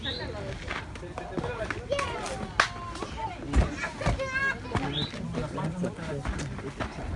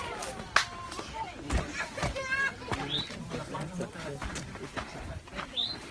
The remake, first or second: second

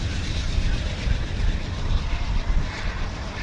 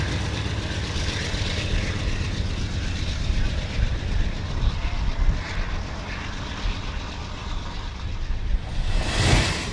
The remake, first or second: first